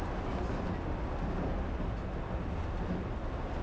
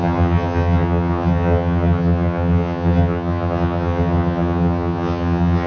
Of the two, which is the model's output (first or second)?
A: second